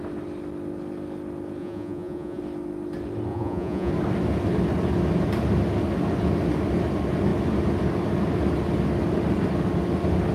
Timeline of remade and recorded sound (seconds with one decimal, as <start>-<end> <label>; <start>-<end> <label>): 0.0-1.6 recorded; 1.6-2.4 remade; 2.4-3.3 recorded; 3.3-3.9 remade; 3.9-10.3 recorded